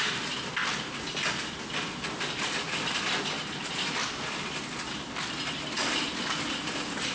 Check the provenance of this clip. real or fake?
real